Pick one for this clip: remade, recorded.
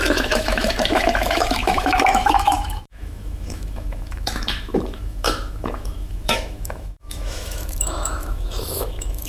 remade